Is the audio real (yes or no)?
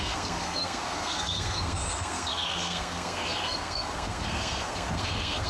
no